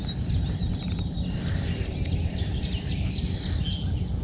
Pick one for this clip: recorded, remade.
recorded